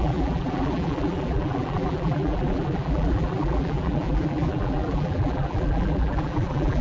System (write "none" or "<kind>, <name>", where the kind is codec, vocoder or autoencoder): vocoder, BigVGAN v2